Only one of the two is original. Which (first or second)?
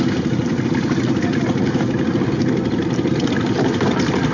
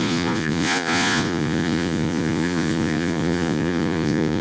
first